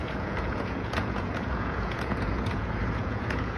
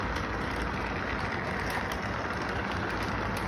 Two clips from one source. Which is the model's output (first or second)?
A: first